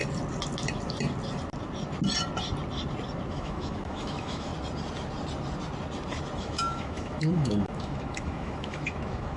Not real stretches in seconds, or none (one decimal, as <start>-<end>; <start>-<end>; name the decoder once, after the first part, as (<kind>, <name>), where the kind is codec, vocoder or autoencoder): 3.3-4.5 (autoencoder, DAC-VAE); 6.4-9.4